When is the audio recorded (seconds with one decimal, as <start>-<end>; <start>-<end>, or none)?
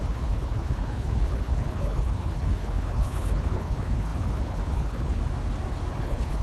5.2-5.9